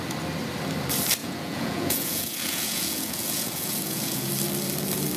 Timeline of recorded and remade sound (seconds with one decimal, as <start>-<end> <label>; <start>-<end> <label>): 0.0-1.2 recorded; 1.2-4.3 remade; 4.3-5.2 recorded